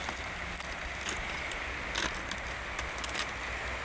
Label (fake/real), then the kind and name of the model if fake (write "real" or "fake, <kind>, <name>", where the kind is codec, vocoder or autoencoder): real